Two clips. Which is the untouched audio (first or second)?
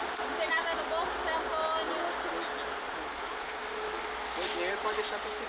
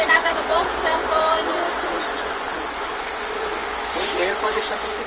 first